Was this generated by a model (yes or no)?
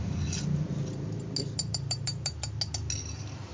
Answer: no